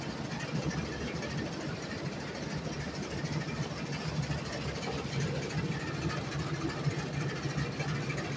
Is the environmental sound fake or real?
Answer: real